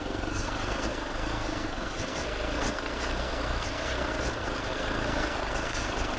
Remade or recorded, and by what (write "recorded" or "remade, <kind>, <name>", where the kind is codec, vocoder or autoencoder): remade, codec, SNAC